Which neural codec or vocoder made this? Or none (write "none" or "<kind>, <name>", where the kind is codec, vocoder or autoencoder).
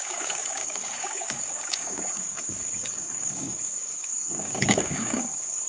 codec, DAC